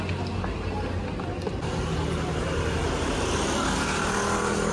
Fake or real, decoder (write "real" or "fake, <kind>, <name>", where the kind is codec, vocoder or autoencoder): real